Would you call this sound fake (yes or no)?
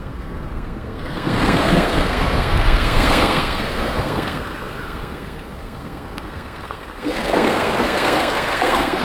yes